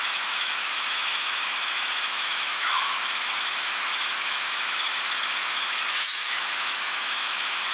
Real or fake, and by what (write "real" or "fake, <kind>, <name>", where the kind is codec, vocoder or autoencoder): fake, autoencoder, DAC-VAE